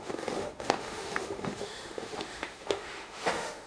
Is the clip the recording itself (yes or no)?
no